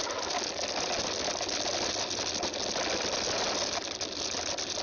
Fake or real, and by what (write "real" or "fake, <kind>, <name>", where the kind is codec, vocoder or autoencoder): real